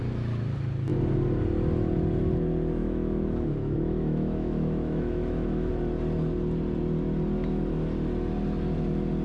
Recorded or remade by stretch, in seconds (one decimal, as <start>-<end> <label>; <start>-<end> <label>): 0.0-2.8 recorded; 2.8-5.7 remade; 5.7-9.2 recorded